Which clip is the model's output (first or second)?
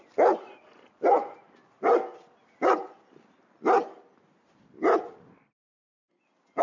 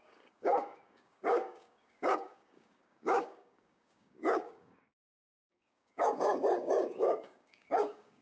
second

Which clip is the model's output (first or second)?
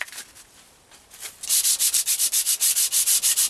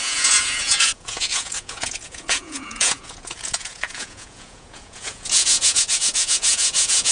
second